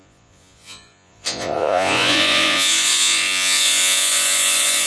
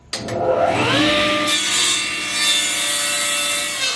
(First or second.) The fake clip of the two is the first